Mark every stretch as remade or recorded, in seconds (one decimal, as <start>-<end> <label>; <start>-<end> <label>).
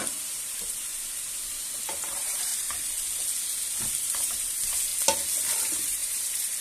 0.0-0.9 remade; 0.9-2.0 recorded; 2.0-2.5 remade; 2.5-3.9 recorded; 3.9-4.9 remade; 4.9-5.6 recorded; 5.6-6.6 remade